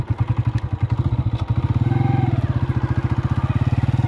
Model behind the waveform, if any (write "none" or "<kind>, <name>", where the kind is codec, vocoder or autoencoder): none